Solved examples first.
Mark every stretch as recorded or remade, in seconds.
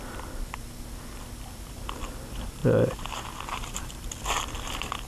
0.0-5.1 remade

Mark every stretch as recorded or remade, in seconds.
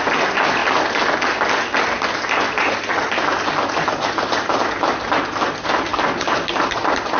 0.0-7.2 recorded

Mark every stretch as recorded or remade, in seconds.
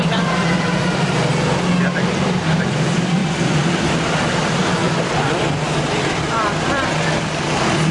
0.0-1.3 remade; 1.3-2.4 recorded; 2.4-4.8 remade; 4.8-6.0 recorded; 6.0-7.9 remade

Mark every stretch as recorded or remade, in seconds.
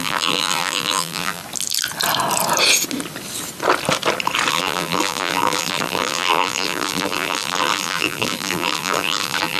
0.0-1.4 remade; 1.4-4.5 recorded; 4.5-9.6 remade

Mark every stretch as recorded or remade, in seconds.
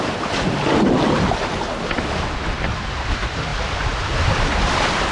0.0-5.1 remade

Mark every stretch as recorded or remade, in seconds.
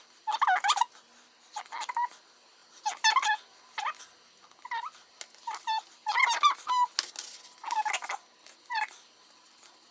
0.0-9.9 recorded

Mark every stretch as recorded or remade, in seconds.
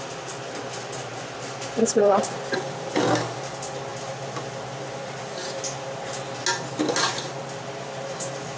0.0-1.1 recorded; 1.1-2.7 remade; 2.7-8.6 recorded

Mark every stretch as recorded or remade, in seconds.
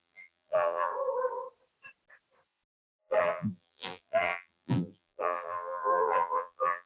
0.0-0.9 remade; 0.9-3.0 recorded; 3.0-6.9 remade